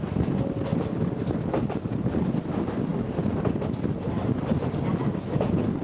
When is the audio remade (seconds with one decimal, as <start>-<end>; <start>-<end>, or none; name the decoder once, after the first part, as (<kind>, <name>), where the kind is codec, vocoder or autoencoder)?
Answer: none